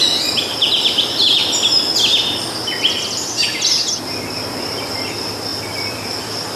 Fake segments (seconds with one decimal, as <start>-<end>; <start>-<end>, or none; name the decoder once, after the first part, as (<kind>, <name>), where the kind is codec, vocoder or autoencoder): 0.0-1.4 (vocoder, BigVGAN v2); 4.5-6.6

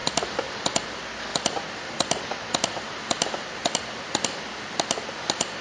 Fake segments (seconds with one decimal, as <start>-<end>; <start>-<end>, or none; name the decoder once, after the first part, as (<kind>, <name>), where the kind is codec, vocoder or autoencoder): 0.0-0.8 (vocoder, BigVGAN v2); 1.3-3.8

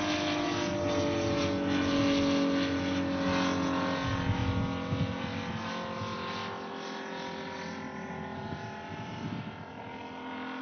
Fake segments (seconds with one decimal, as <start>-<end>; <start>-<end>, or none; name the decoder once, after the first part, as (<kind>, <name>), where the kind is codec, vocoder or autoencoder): none

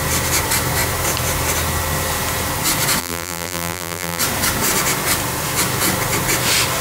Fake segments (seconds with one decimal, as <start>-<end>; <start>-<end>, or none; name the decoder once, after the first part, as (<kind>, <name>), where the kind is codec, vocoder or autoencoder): 3.0-4.2 (vocoder, BigVGAN v2)

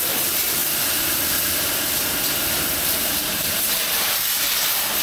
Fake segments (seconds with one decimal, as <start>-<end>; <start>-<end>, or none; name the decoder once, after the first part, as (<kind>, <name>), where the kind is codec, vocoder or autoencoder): 0.0-0.6 (vocoder, BigVGAN v2); 3.0-5.0

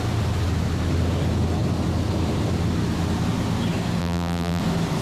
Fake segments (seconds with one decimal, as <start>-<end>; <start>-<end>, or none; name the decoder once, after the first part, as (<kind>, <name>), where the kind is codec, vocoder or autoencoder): 4.0-4.6 (vocoder, BigVGAN v2)

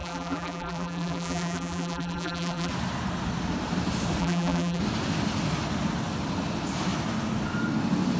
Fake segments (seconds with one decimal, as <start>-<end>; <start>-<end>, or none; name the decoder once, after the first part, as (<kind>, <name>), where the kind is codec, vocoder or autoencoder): 0.0-2.7 (vocoder, BigVGAN v2); 4.2-4.8